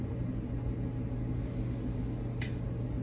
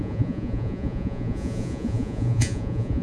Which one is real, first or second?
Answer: first